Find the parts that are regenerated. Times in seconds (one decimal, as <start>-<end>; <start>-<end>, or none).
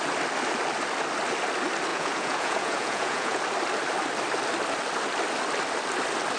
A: 1.9-3.4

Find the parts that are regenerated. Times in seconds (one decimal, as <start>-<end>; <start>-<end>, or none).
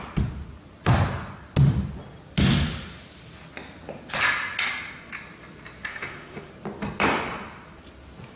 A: 5.9-6.5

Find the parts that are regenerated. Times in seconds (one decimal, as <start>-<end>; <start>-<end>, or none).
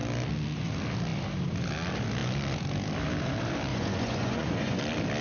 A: 3.7-4.8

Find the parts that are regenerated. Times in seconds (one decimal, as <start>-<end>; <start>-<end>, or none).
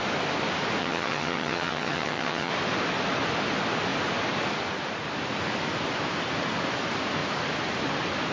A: 0.8-2.5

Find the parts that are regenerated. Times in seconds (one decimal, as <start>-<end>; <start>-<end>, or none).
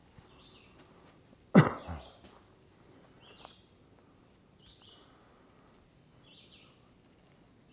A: none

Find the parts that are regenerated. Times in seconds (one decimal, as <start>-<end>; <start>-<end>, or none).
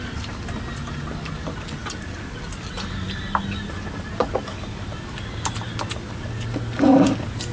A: none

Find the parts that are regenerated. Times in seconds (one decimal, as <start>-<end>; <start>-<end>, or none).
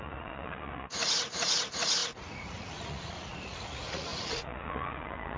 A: 0.0-5.4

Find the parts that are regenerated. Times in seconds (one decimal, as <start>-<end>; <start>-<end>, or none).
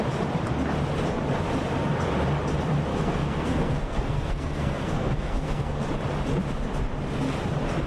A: 2.9-5.9